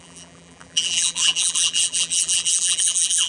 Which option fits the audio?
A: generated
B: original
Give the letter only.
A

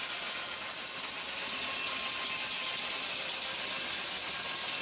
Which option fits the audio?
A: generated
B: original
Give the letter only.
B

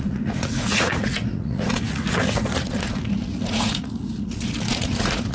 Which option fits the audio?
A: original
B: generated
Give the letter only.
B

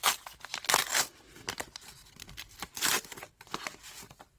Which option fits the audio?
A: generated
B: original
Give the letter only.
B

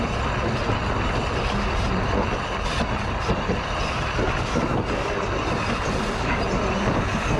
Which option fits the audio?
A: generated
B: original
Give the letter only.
B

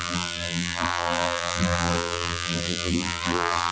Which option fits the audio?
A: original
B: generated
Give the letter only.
B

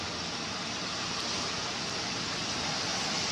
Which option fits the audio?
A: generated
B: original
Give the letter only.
B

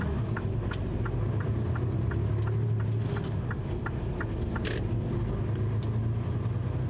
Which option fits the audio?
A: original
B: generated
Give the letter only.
A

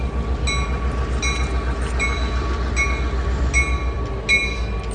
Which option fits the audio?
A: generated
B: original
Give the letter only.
B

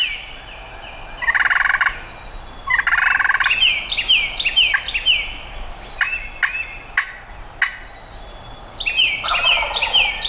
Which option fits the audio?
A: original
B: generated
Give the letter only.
A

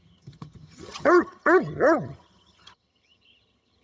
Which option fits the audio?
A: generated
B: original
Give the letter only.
A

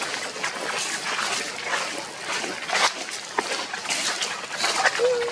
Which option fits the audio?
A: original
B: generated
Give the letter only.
A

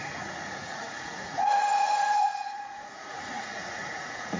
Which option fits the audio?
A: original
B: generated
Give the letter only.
B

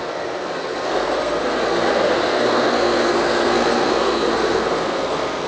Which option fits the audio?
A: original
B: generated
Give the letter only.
B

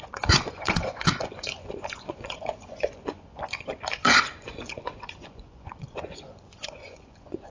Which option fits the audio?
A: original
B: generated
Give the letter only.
B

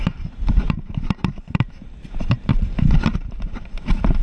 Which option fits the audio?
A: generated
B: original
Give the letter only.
A